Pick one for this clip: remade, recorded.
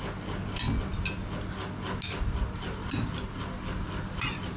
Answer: recorded